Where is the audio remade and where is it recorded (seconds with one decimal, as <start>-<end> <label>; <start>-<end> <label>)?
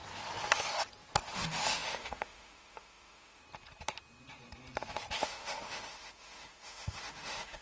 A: 0.0-1.3 recorded; 1.3-3.4 remade; 3.4-5.2 recorded; 5.2-7.6 remade